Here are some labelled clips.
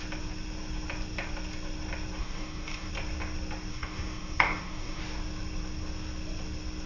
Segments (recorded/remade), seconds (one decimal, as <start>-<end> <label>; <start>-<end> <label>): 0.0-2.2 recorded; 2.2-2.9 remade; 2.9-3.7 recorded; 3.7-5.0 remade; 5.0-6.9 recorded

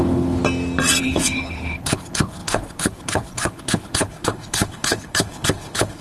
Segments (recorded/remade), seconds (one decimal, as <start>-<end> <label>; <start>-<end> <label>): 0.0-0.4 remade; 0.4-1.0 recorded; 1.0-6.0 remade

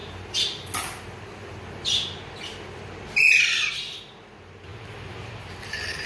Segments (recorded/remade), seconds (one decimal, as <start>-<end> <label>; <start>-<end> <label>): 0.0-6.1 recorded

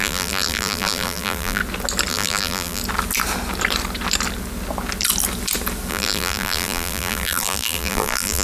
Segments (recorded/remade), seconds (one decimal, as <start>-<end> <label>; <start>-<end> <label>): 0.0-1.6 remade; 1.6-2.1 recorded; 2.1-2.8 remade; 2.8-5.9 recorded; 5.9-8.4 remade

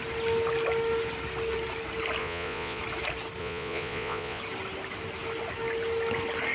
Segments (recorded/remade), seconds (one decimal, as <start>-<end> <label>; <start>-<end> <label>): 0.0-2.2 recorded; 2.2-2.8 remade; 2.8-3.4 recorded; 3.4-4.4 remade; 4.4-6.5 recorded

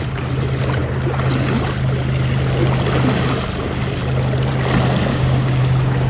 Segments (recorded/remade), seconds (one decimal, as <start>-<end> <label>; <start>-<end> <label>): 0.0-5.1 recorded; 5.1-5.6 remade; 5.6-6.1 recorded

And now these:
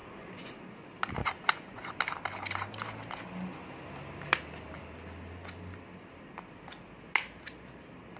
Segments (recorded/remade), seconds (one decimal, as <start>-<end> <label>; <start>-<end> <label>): 0.0-0.6 remade; 0.6-1.2 recorded; 1.2-2.0 remade; 2.0-8.2 recorded

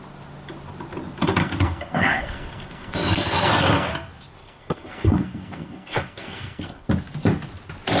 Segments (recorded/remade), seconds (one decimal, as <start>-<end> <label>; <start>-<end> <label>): 0.0-1.4 recorded; 1.4-3.9 remade; 3.9-4.4 recorded; 4.4-6.9 remade; 6.9-8.0 recorded